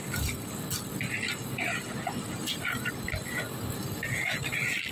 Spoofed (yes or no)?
no